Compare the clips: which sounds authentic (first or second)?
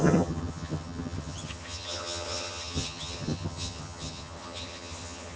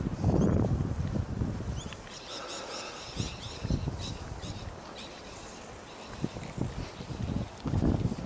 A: second